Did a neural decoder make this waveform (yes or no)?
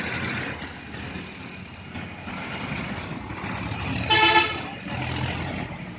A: no